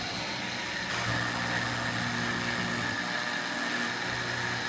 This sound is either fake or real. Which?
real